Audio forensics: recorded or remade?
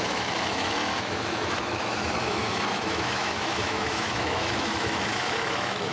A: remade